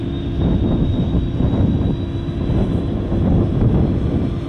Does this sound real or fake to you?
real